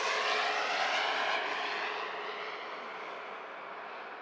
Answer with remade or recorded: recorded